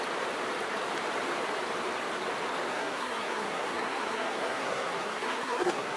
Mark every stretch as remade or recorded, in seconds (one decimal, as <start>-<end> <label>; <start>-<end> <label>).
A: 0.0-2.7 recorded; 2.7-6.0 remade